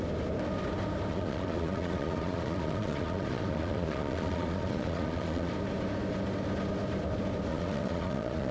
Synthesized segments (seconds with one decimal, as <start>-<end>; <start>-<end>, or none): 1.1-5.5; 7.5-8.5